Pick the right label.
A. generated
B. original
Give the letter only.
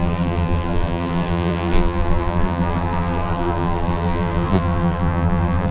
A